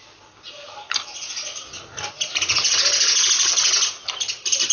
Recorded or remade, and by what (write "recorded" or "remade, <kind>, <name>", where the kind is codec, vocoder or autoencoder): recorded